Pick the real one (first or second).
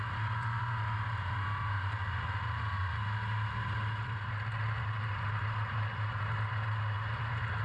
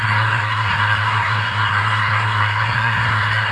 first